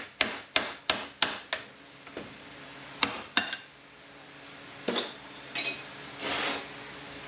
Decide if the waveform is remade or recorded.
recorded